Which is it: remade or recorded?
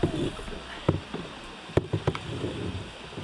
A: recorded